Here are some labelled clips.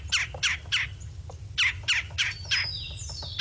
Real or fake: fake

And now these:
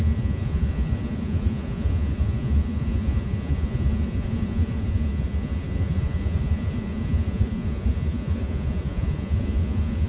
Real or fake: fake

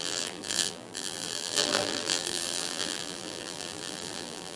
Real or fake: fake